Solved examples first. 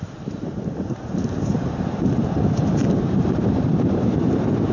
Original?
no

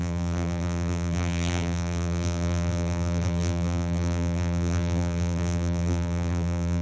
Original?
no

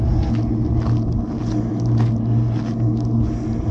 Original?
yes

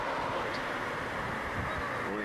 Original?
yes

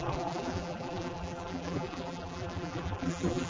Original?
no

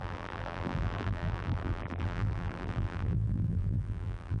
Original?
no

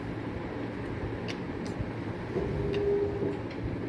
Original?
yes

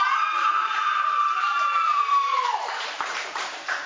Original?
no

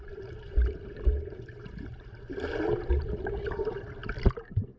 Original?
no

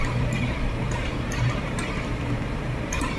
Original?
no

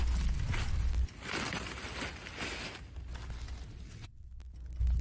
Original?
yes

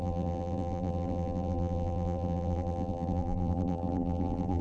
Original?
no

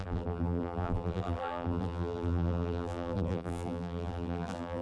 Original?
no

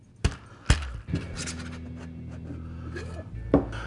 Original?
yes